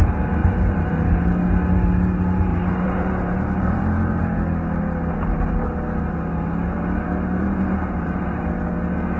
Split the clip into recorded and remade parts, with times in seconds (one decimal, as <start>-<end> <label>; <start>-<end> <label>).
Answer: 0.0-0.4 recorded; 0.4-0.9 remade; 0.9-2.5 recorded; 2.5-4.2 remade; 4.2-7.4 recorded; 7.4-8.4 remade; 8.4-9.2 recorded